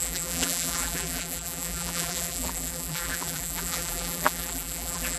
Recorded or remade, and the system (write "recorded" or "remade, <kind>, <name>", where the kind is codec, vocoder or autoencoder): remade, vocoder, BigVGAN v2